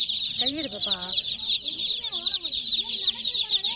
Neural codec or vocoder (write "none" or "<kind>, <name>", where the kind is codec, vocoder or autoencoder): vocoder, BigVGAN v2